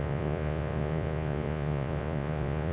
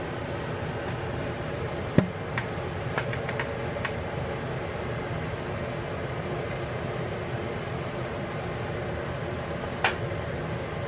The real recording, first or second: second